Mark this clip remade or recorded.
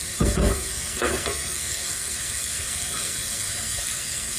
remade